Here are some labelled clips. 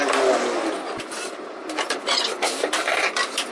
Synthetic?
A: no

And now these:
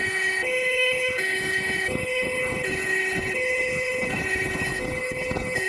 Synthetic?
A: yes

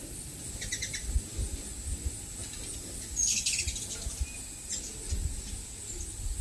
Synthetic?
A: no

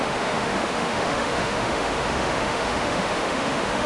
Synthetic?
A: yes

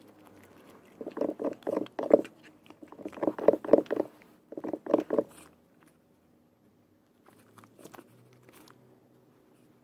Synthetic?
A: no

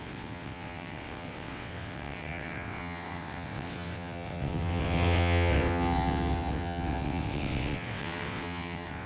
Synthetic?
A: yes